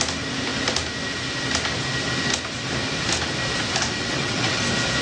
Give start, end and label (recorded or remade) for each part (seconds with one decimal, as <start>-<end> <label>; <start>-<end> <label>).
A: 0.0-4.0 recorded; 4.0-4.6 remade; 4.6-5.0 recorded